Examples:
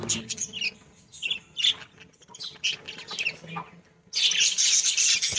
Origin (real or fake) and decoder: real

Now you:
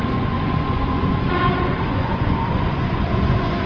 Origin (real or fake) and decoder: fake, vocoder, Vocos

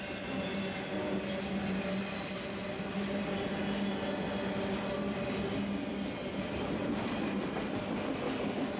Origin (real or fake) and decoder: real